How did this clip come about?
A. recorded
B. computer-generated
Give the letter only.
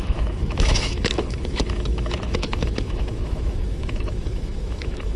B